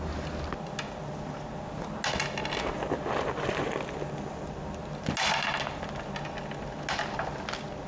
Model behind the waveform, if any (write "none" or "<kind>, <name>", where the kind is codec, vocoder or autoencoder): none